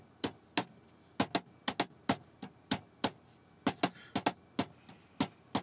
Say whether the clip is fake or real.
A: real